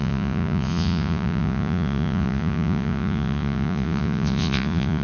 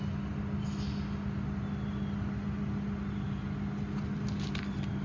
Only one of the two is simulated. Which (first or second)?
first